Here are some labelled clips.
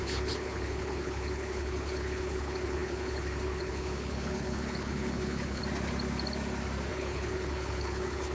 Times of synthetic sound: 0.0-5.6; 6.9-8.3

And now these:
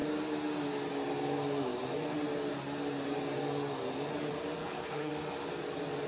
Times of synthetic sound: 4.6-5.1

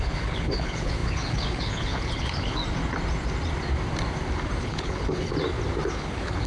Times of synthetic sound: 0.0-2.6; 4.6-5.3; 5.9-6.5

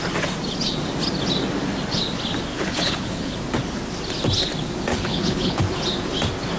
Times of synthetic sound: 2.5-3.4; 4.9-5.6

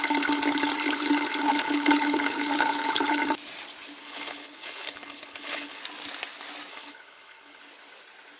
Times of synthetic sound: 1.4-3.2; 4.0-5.8; 6.7-7.6